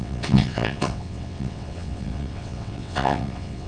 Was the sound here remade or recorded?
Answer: remade